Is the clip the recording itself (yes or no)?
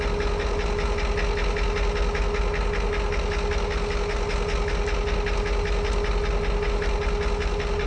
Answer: yes